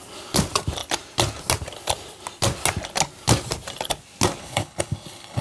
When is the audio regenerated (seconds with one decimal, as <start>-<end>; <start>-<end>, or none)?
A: 4.4-5.4